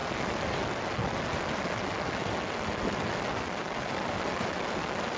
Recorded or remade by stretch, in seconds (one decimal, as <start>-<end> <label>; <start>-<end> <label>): 0.0-5.2 recorded

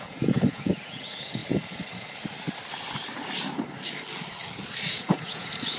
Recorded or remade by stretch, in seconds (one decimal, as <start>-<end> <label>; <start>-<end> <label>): 0.0-1.4 remade; 1.4-4.9 recorded; 4.9-5.8 remade

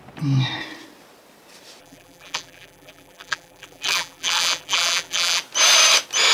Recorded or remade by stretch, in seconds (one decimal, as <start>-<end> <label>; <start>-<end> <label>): 0.0-1.8 recorded; 1.8-5.4 remade; 5.4-6.3 recorded

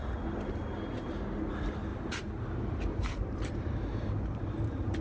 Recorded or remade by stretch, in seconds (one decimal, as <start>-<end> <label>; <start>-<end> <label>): 0.0-1.9 recorded; 1.9-5.0 remade

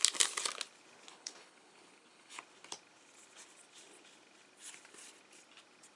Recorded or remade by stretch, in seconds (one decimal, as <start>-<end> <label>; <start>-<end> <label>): 0.0-1.1 recorded; 1.1-2.4 remade; 2.4-6.0 recorded

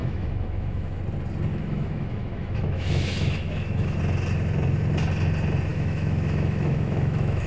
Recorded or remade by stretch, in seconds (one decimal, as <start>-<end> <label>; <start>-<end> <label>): 0.0-1.0 remade; 1.0-1.5 recorded; 1.5-4.0 remade; 4.0-5.7 recorded; 5.7-7.5 remade